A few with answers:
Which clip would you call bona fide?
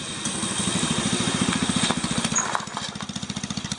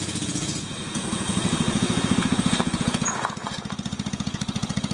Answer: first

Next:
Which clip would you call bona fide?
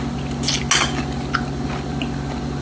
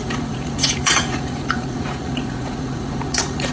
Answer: first